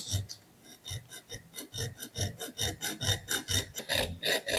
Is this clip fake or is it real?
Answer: real